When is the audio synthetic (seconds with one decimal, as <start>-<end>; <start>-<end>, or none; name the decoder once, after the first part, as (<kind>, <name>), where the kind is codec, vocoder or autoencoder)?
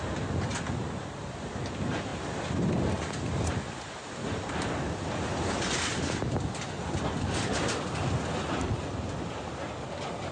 none